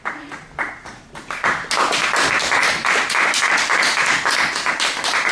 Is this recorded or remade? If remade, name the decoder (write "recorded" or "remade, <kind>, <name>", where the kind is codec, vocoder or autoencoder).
recorded